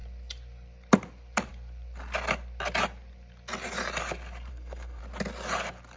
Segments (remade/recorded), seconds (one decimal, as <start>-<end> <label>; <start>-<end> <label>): 0.0-4.5 recorded; 4.5-5.0 remade; 5.0-6.0 recorded